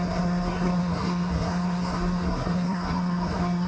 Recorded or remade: remade